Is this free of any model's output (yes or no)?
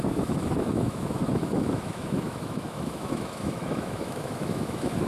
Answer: no